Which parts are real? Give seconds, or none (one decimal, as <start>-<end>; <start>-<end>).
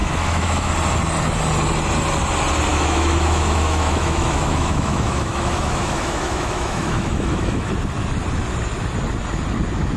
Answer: 0.7-2.7; 7.7-10.0